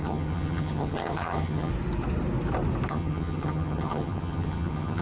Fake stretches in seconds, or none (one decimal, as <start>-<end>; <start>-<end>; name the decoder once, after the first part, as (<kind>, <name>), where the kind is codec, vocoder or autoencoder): 0.0-1.7 (vocoder, HiFi-GAN); 2.9-5.0